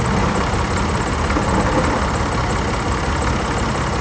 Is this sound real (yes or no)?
yes